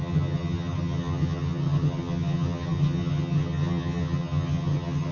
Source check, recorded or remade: remade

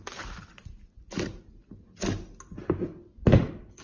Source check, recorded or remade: recorded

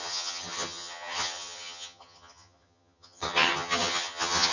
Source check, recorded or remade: remade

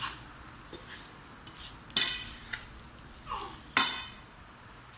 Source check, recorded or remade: recorded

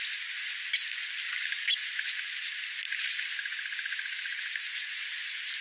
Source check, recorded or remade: recorded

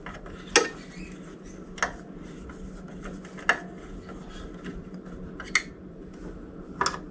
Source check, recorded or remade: recorded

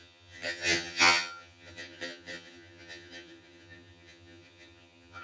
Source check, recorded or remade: remade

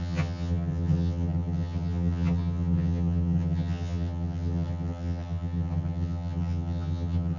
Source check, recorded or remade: remade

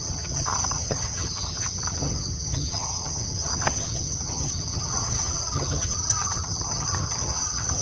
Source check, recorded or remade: remade